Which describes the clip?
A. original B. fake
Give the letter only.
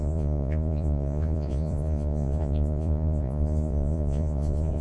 B